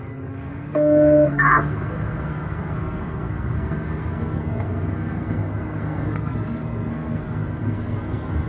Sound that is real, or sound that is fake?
fake